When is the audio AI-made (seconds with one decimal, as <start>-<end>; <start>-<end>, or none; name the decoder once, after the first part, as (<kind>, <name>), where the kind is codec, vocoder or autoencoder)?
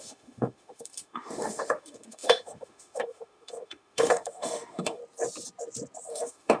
0.0-5.0 (autoencoder, DAC-VAE); 6.1-6.6